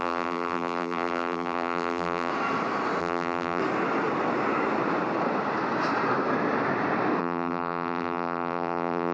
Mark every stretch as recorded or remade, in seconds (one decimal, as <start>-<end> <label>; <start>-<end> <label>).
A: 0.0-2.3 remade; 2.3-3.0 recorded; 3.0-3.6 remade; 3.6-7.2 recorded; 7.2-9.1 remade